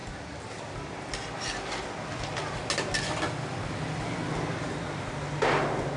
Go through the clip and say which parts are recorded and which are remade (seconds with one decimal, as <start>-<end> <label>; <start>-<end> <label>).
0.0-6.0 recorded